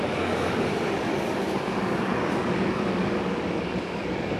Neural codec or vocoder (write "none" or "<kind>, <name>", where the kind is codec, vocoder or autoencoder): codec, DAC